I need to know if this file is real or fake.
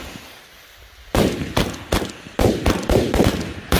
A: fake